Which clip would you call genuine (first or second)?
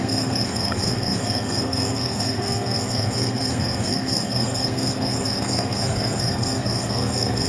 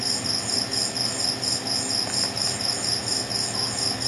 second